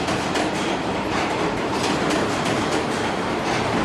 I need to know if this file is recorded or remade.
recorded